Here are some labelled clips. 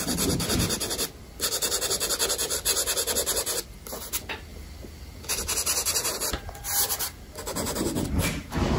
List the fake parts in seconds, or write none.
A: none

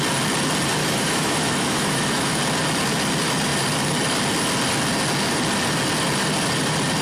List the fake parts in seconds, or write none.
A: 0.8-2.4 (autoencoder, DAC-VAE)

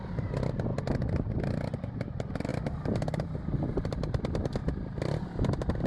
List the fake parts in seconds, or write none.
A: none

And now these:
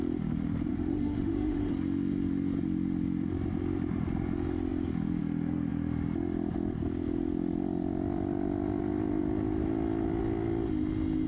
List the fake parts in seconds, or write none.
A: 0.7-1.7 (autoencoder, DAC-VAE)

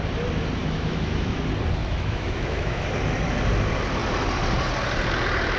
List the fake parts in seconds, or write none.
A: 0.6-1.4 (autoencoder, DAC-VAE); 1.8-2.9

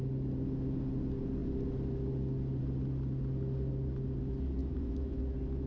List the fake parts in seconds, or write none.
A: 4.6-5.2 (autoencoder, DAC-VAE)